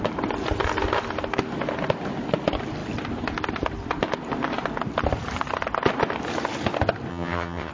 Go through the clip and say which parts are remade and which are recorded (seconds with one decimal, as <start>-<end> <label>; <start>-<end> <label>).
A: 0.0-7.1 recorded; 7.1-7.7 remade

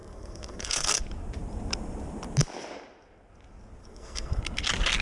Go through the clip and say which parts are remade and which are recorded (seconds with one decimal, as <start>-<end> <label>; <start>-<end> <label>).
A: 0.0-1.0 remade; 1.0-3.8 recorded; 3.8-4.4 remade; 4.4-5.0 recorded

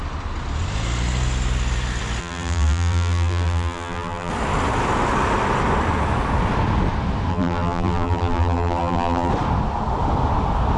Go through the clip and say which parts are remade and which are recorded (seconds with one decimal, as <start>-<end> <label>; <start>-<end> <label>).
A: 0.0-2.2 recorded; 2.2-4.3 remade; 4.3-7.3 recorded; 7.3-9.3 remade; 9.3-10.8 recorded